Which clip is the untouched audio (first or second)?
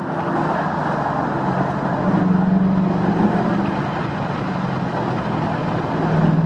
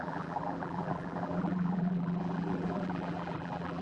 first